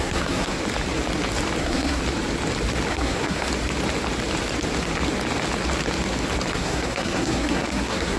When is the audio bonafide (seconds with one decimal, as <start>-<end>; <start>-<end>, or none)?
0.6-1.6; 2.0-2.9; 3.5-6.5